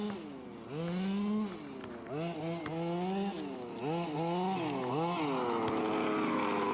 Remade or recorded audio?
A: recorded